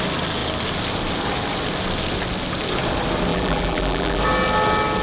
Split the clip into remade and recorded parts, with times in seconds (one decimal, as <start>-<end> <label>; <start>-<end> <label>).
0.0-3.3 recorded; 3.3-4.2 remade; 4.2-5.0 recorded